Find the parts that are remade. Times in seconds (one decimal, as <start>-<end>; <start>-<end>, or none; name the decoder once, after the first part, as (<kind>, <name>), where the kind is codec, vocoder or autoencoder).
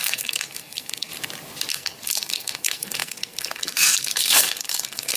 0.0-1.1 (codec, SNAC); 1.7-5.2